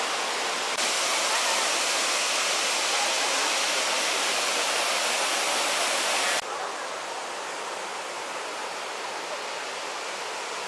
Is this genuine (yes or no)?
yes